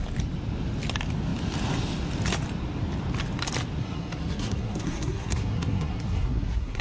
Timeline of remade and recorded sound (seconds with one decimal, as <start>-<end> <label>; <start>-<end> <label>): 0.0-3.8 recorded; 3.8-6.8 remade

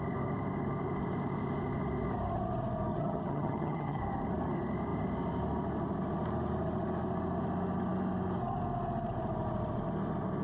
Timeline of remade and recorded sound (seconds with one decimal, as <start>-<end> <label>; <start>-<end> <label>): 0.0-2.9 recorded; 2.9-4.0 remade; 4.0-10.4 recorded

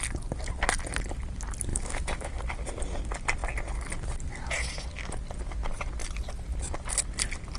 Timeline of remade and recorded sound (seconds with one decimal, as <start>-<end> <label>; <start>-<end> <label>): 0.0-1.7 recorded; 1.7-2.4 remade; 2.4-7.6 recorded

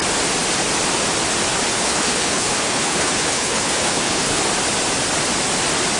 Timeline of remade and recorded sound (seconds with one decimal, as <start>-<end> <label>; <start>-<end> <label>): 0.0-1.7 recorded; 1.7-4.4 remade; 4.4-6.0 recorded

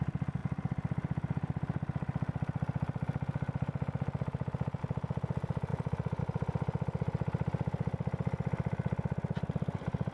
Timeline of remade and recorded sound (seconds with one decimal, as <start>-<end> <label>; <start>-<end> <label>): 0.0-0.4 recorded; 0.4-4.8 remade; 4.8-10.1 recorded

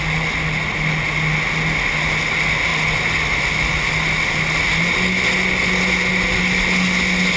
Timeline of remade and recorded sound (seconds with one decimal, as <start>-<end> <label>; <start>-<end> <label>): 0.0-7.4 recorded